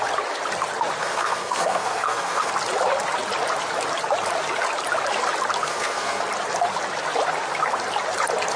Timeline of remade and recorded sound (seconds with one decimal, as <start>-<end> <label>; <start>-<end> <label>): 0.0-1.0 recorded; 1.0-2.5 remade; 2.5-5.6 recorded; 5.6-6.2 remade; 6.2-8.6 recorded